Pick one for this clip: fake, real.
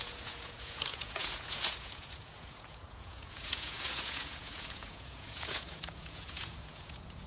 fake